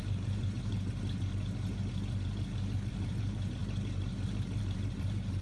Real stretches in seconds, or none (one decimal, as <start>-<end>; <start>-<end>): 0.7-2.9; 3.6-4.6